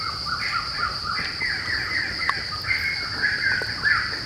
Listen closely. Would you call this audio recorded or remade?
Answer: recorded